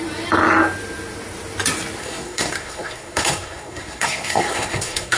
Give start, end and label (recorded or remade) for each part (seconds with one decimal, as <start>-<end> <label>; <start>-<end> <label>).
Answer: 0.0-2.0 recorded; 2.0-5.2 remade